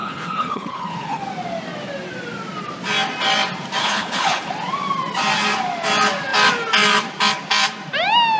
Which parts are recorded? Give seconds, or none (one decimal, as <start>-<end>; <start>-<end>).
1.2-3.8; 4.5-8.4